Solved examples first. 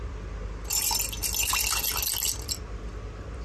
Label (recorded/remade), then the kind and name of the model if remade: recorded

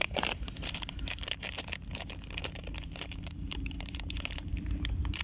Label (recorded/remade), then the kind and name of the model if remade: remade, vocoder, BigVGAN v2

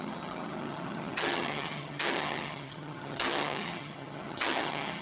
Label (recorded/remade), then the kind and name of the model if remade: remade, vocoder, HiFi-GAN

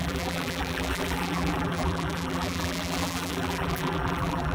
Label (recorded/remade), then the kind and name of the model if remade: remade, vocoder, BigVGAN v2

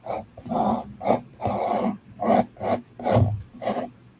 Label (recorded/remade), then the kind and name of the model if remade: recorded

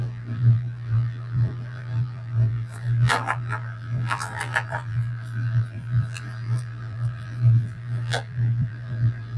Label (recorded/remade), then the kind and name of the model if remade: remade, vocoder, BigVGAN v2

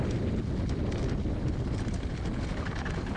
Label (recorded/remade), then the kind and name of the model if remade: recorded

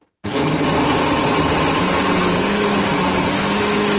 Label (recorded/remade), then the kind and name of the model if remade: recorded